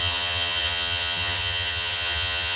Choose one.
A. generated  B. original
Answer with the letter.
A